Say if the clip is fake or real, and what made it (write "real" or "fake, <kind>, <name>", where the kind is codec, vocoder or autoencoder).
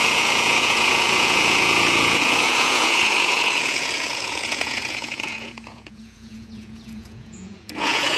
fake, vocoder, Vocos